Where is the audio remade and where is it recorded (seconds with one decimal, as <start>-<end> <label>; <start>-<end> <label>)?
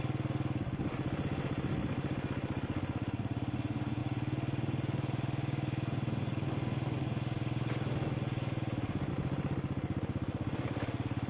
0.0-11.3 recorded